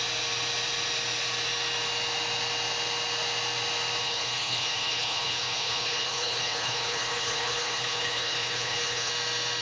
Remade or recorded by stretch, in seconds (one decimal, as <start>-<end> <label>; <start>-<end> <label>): 0.0-4.0 recorded; 4.0-9.1 remade; 9.1-9.6 recorded